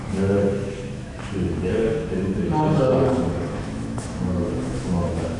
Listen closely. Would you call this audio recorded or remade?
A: remade